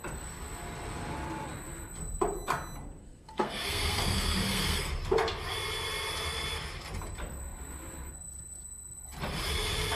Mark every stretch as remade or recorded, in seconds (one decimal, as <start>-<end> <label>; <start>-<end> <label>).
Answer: 0.0-3.0 recorded; 3.0-4.9 remade; 4.9-10.0 recorded